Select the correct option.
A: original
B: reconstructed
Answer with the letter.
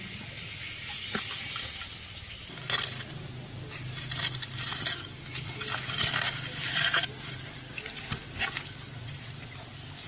A